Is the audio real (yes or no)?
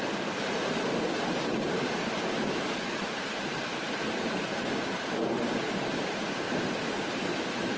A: no